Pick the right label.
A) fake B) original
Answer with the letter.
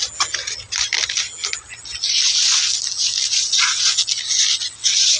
B